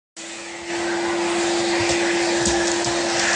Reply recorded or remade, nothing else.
recorded